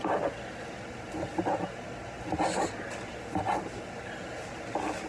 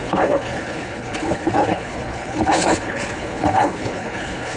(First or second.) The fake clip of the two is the second